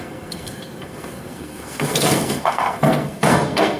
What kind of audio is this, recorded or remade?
remade